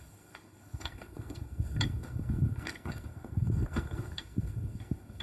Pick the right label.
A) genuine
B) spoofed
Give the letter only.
B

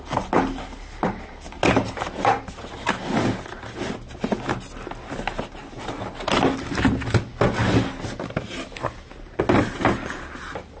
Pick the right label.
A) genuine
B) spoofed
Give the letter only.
A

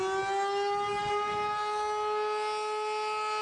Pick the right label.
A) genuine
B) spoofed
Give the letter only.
A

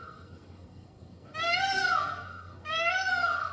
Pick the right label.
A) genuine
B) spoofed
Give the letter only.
B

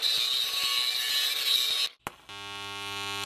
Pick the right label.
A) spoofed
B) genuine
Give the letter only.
B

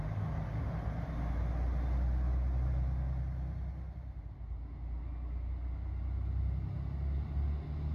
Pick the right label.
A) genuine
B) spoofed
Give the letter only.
A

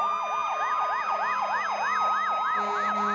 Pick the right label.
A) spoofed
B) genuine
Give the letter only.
B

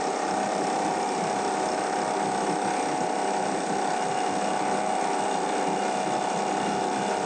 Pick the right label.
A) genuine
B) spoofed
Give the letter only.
A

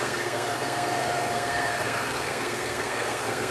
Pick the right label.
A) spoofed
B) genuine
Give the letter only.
A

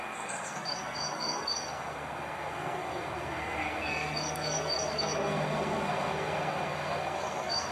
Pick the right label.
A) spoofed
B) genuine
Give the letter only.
A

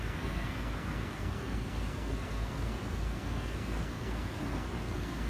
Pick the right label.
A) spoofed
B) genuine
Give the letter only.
A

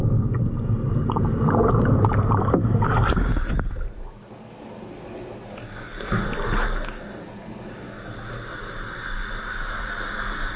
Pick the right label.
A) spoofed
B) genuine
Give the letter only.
B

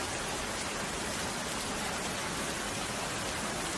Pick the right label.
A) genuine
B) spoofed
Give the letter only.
A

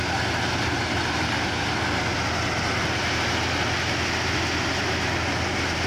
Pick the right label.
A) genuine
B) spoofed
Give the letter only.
A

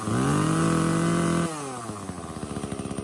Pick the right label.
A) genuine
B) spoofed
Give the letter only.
A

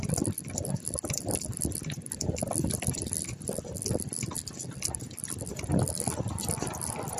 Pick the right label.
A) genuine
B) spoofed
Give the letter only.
A